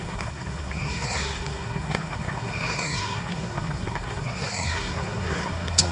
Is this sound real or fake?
fake